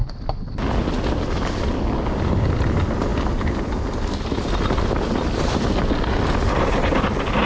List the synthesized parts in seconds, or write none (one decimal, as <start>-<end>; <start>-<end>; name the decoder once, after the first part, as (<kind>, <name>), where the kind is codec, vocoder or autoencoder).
none